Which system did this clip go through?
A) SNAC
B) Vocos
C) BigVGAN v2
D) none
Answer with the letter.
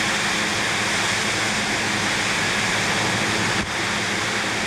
D